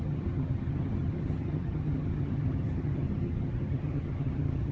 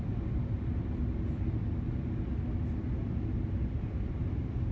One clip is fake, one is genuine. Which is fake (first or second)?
first